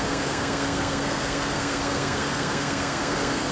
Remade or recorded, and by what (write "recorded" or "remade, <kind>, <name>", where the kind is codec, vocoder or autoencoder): remade, codec, SNAC